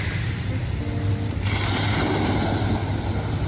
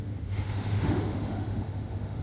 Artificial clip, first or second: second